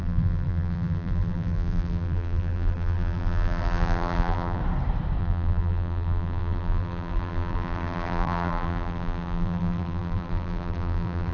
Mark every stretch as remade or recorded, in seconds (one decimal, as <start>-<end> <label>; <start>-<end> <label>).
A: 0.0-4.6 remade; 4.6-5.2 recorded; 5.2-11.3 remade